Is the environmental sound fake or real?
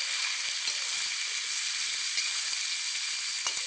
real